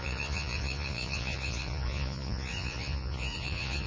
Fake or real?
fake